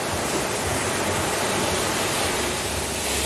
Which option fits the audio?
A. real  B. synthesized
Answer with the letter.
A